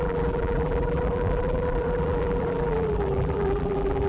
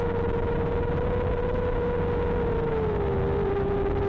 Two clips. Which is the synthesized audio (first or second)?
first